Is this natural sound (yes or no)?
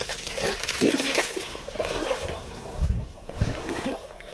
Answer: no